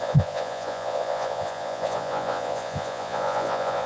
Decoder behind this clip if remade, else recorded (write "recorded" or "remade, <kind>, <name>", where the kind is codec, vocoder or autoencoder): remade, vocoder, Vocos